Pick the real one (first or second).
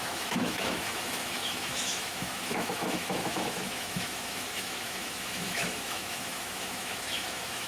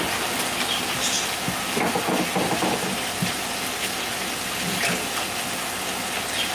second